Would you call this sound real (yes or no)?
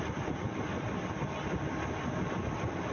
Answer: yes